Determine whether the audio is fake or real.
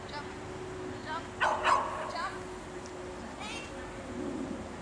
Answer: real